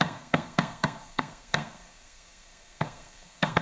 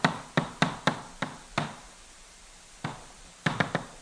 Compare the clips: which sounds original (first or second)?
second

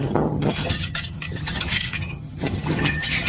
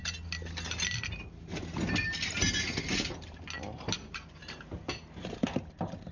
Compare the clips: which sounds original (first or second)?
second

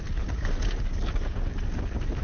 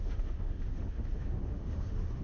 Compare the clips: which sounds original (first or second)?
first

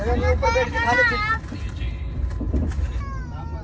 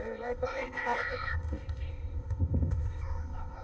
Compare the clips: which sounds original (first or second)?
first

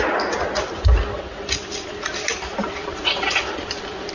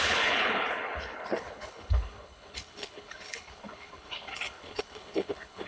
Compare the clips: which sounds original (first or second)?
first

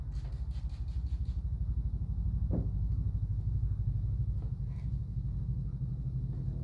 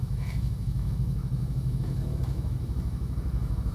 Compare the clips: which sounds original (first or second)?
first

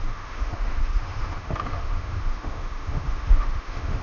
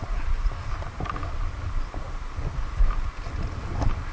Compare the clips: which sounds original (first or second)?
second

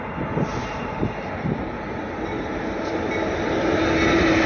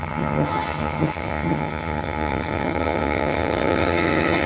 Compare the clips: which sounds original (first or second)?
first